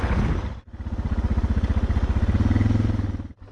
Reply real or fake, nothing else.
real